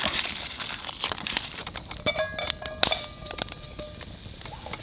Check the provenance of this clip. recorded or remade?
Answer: recorded